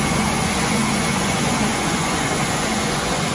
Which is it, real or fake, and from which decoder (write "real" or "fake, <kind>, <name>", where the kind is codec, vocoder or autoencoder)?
fake, vocoder, Vocos